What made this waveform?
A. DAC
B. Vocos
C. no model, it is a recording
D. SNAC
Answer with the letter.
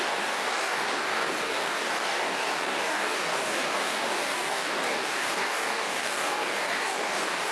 A